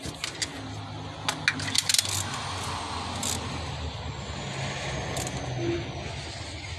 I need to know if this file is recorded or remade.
recorded